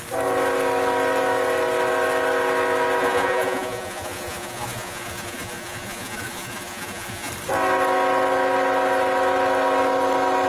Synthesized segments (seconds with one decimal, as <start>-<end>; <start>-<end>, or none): 3.0-7.3